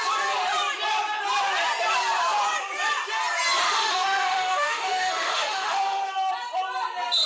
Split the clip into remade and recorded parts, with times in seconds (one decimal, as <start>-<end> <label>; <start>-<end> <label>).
0.0-3.6 recorded; 3.6-5.8 remade; 5.8-7.3 recorded

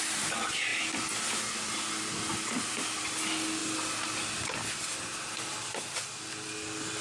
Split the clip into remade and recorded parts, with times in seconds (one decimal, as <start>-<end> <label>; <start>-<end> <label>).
0.0-7.0 recorded

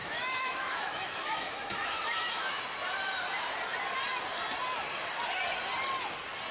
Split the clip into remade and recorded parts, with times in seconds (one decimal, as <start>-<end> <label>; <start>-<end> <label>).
0.0-2.6 remade; 2.6-6.5 recorded

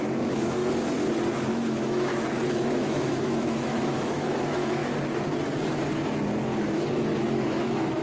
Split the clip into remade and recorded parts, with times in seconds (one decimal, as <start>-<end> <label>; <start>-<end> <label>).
0.0-0.6 remade; 0.6-1.5 recorded; 1.5-2.1 remade; 2.1-2.7 recorded; 2.7-4.8 remade; 4.8-7.1 recorded; 7.1-8.0 remade

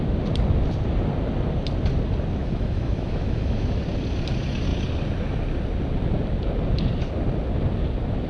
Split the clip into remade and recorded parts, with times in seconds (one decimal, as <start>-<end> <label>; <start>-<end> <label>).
0.0-2.4 recorded; 2.4-3.8 remade; 3.8-8.3 recorded

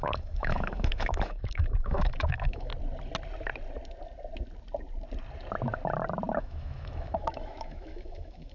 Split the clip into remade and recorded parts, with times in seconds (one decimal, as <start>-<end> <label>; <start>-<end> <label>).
0.0-2.7 remade; 2.7-6.4 recorded; 6.4-8.5 remade